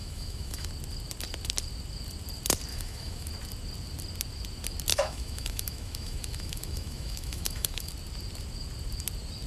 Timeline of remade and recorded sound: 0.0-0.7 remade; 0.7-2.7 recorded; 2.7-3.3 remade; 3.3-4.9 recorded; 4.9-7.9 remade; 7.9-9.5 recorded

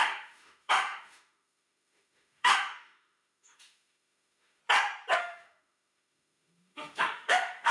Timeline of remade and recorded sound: 0.0-4.6 remade; 4.6-5.2 recorded; 5.2-7.7 remade